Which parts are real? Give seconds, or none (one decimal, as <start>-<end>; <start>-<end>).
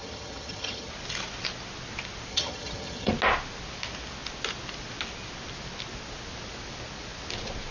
0.9-2.3; 3.1-7.7